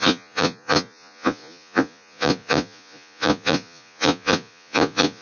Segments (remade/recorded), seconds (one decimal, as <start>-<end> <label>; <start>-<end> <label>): 0.0-5.2 remade

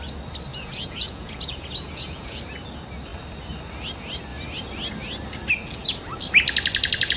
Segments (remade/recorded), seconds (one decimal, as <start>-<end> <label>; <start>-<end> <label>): 0.0-0.5 recorded; 0.5-2.4 remade; 2.4-7.2 recorded

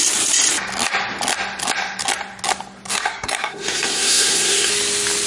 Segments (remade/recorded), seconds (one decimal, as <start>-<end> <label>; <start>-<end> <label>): 0.0-2.9 recorded; 2.9-4.7 remade; 4.7-5.3 recorded

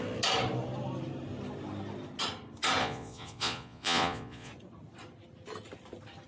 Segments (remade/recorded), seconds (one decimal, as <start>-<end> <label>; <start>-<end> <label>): 0.0-2.8 recorded; 2.8-4.5 remade; 4.5-6.3 recorded

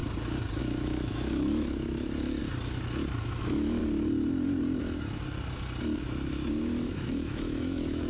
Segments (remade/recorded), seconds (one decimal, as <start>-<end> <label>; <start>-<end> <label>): 0.0-0.6 recorded; 0.6-2.4 remade; 2.4-3.4 recorded; 3.4-3.8 remade; 3.8-6.0 recorded; 6.0-8.1 remade

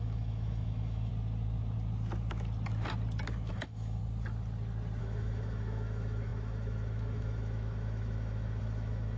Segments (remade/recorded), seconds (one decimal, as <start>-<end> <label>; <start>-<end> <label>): 0.0-1.1 remade; 1.1-3.5 recorded; 3.5-4.0 remade; 4.0-5.0 recorded; 5.0-9.2 remade

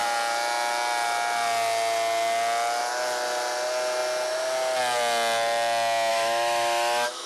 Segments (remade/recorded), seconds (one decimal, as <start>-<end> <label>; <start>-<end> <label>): 0.0-6.1 recorded; 6.1-7.3 remade